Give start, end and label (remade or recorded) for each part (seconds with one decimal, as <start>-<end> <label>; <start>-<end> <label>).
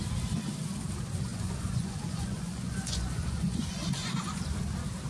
0.0-1.3 recorded; 1.3-4.4 remade; 4.4-5.1 recorded